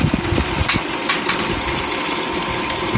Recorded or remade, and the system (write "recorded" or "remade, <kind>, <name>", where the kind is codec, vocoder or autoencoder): recorded